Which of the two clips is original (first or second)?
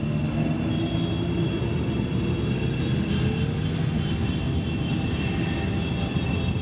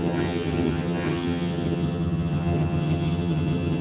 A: first